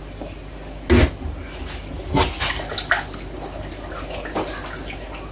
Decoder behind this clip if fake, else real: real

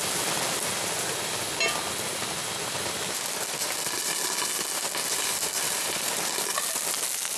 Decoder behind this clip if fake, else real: real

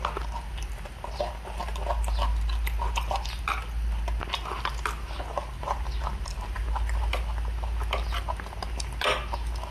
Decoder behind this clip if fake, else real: real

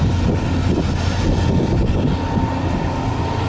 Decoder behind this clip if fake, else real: real